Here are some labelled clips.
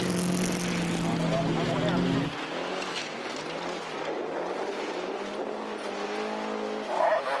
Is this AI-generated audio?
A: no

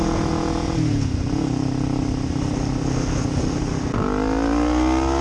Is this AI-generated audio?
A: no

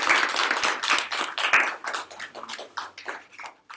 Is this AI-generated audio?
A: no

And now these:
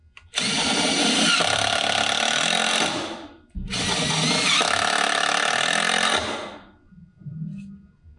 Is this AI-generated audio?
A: no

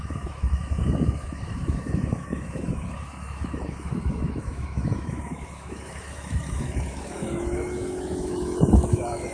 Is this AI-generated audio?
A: yes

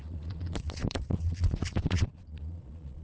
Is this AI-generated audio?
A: yes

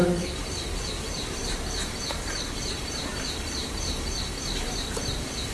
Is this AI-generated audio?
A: yes